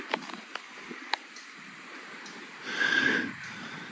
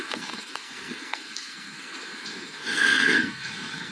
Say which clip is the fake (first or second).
second